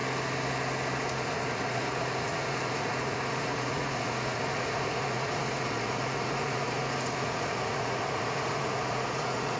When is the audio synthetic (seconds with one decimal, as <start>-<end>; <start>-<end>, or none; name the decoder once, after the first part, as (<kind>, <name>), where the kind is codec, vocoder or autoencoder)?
1.1-9.6 (vocoder, Vocos)